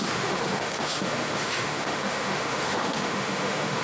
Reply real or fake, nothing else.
fake